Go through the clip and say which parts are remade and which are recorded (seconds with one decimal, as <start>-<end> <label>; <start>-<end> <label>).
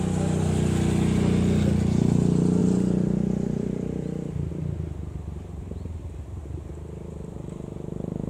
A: 0.0-2.6 recorded; 2.6-4.5 remade; 4.5-6.4 recorded; 6.4-7.4 remade; 7.4-8.3 recorded